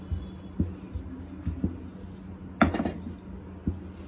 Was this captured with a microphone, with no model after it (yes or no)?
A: yes